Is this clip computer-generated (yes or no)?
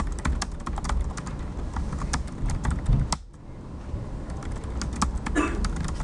no